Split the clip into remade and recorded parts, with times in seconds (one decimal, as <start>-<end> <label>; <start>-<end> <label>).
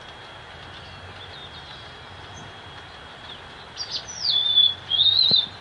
0.0-5.6 recorded